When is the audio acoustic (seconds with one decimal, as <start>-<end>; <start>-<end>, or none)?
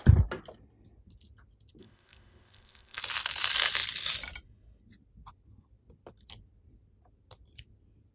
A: 0.0-1.8; 3.0-8.1